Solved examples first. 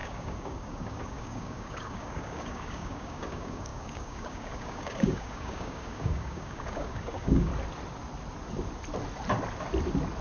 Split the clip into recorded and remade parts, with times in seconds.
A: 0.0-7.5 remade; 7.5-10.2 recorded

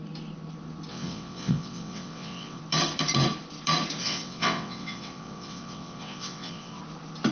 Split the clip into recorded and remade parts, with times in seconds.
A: 0.0-0.9 recorded; 0.9-2.6 remade; 2.6-4.0 recorded; 4.0-6.8 remade; 6.8-7.3 recorded

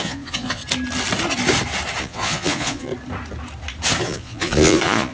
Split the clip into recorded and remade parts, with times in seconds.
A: 0.0-0.6 remade; 0.6-2.0 recorded; 2.0-2.9 remade; 2.9-4.0 recorded; 4.0-5.1 remade